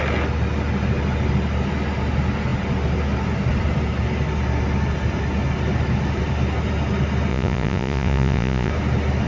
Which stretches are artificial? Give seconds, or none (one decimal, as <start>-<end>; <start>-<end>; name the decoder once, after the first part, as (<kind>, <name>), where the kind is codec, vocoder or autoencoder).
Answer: 7.3-8.7 (vocoder, Vocos)